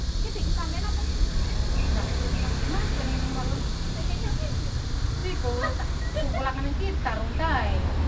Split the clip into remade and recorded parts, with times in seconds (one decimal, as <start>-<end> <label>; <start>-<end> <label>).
0.0-8.1 recorded